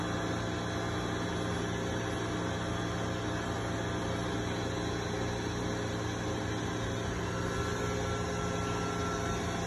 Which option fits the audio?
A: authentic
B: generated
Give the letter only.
A